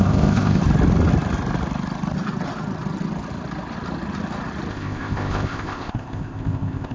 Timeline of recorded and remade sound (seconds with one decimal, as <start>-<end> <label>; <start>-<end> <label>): 0.0-0.6 remade; 0.6-4.7 recorded; 4.7-6.9 remade